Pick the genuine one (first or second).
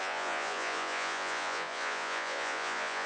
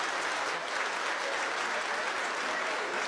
second